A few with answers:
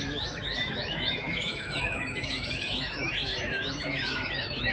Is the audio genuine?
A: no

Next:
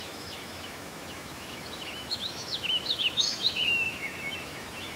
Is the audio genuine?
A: no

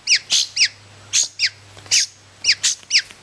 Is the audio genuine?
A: yes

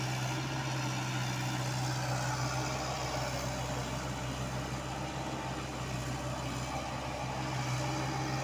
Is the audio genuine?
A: yes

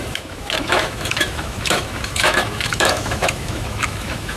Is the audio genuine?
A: no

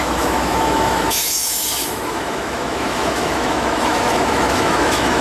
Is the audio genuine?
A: no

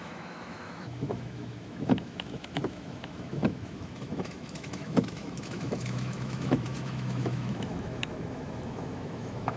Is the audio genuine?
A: no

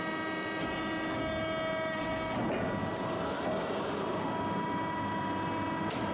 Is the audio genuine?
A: yes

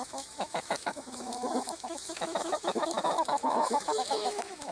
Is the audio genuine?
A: no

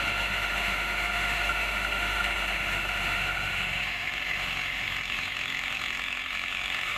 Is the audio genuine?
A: no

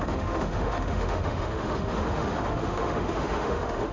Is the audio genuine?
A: no